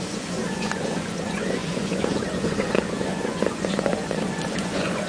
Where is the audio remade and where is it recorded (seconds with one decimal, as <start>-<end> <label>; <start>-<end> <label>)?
0.0-5.1 remade